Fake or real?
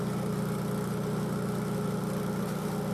real